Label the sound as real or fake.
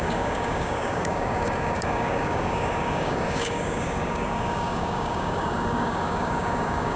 fake